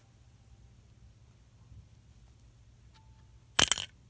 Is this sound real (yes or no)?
yes